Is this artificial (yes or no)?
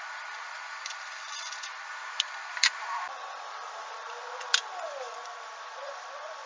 yes